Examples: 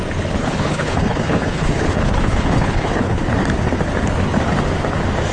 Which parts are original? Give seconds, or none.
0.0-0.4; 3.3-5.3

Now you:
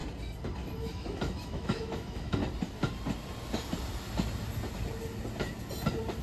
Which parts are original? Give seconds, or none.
0.0-0.8; 2.4-6.2

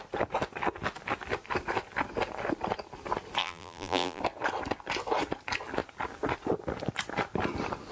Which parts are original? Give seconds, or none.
0.0-3.4; 4.2-7.9

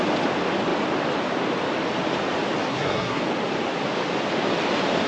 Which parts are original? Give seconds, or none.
0.0-2.7; 3.2-5.1

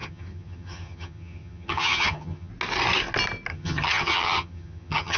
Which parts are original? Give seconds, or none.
2.5-3.5

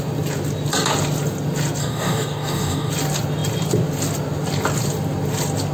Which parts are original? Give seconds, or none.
0.0-1.8; 2.9-5.7

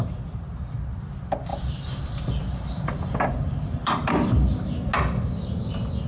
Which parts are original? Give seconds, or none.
0.0-1.5; 4.1-6.1